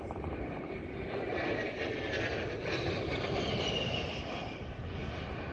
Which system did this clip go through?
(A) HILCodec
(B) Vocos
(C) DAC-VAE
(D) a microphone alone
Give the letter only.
D